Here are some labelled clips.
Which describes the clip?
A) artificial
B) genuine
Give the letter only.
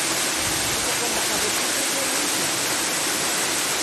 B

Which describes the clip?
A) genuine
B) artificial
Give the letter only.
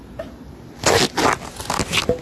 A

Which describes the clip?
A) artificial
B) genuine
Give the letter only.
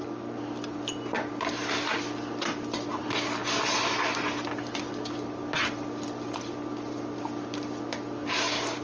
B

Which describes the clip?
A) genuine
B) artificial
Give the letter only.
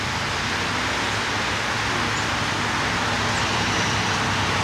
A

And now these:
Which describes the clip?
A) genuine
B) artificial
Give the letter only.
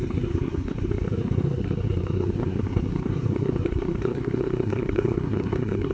B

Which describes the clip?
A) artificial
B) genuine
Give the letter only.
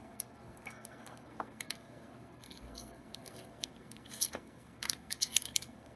A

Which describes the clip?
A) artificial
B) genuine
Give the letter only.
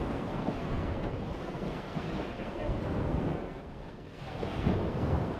A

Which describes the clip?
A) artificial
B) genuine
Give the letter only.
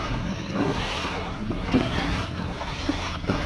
A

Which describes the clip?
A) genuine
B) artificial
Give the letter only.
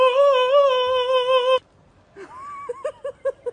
A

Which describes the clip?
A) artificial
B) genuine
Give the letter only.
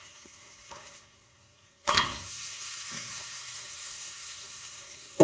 A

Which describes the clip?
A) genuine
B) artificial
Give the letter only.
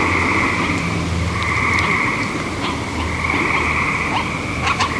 A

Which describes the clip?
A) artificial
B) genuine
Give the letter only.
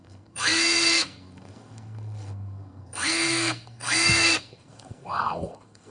A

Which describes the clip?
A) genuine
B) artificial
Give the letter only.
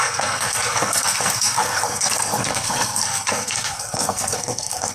B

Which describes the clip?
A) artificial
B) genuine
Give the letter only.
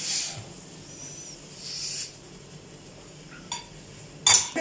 B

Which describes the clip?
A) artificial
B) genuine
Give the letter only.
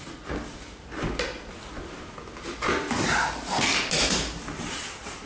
B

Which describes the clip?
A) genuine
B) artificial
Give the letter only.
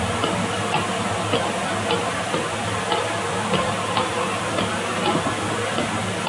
A